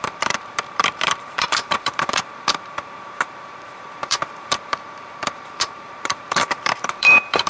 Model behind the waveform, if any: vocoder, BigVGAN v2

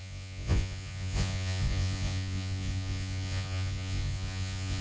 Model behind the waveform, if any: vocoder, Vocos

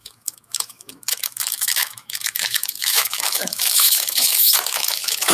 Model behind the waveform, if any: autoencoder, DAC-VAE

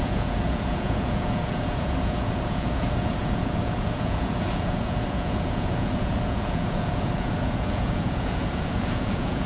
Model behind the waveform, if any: vocoder, Vocos